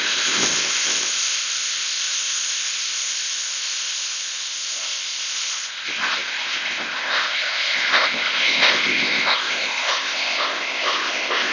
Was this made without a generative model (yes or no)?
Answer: no